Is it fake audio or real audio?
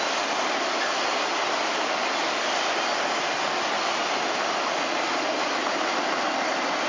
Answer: real